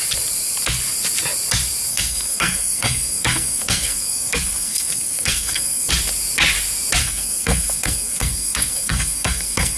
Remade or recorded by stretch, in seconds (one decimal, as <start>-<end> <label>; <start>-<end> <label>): 0.0-1.9 recorded; 1.9-5.9 remade; 5.9-7.0 recorded; 7.0-9.8 remade